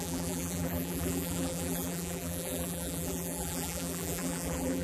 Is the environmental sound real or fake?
fake